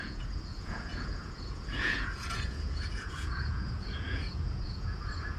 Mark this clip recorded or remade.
remade